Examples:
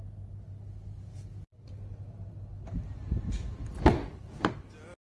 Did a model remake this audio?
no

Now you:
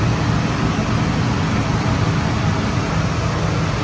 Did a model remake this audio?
no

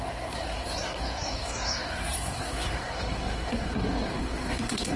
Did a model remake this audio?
yes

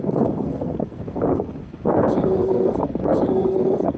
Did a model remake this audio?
yes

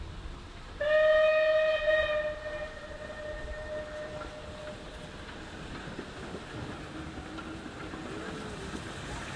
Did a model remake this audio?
no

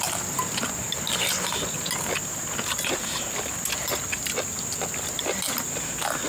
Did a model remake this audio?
no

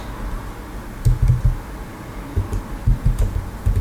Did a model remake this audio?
no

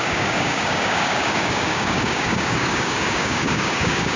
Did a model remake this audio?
yes